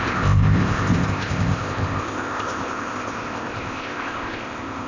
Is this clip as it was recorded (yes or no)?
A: no